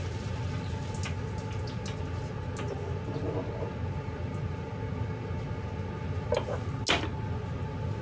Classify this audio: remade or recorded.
recorded